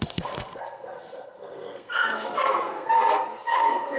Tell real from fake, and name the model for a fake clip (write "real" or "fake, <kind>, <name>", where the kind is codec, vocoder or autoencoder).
fake, codec, SNAC